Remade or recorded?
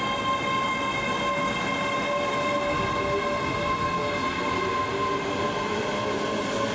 recorded